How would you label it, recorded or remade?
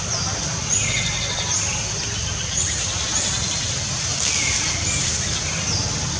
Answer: recorded